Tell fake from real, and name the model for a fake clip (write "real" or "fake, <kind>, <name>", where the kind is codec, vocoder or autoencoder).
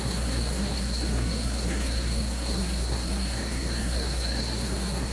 fake, codec, SNAC